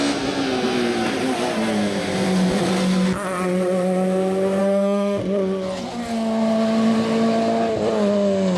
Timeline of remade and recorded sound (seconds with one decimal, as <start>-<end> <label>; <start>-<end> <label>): 0.0-4.6 recorded; 4.6-5.2 remade; 5.2-8.6 recorded